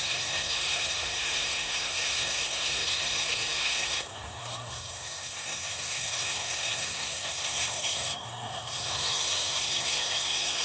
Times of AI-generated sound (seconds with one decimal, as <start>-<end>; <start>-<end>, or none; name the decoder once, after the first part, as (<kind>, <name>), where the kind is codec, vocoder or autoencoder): 0.0-10.6 (codec, SNAC)